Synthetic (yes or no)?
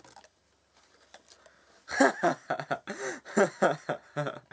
no